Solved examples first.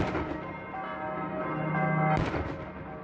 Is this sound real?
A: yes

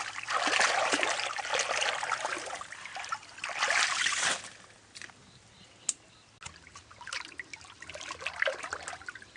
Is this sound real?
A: yes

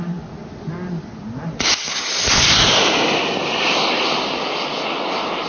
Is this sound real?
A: yes